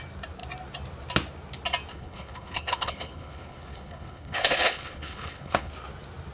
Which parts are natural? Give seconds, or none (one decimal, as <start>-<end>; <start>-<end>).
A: 0.0-1.9; 5.7-6.3